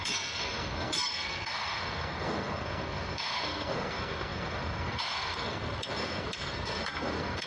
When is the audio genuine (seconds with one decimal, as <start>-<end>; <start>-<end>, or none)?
none